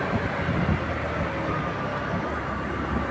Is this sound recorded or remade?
recorded